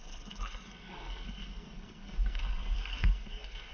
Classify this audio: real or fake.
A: fake